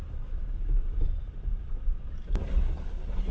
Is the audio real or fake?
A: real